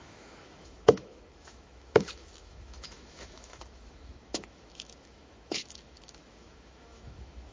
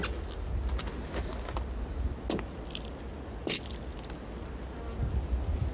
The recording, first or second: second